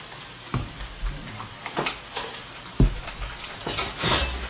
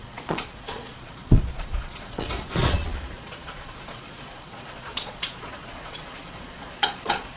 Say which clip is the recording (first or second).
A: first